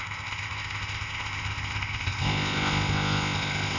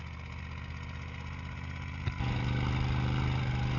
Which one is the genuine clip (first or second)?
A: second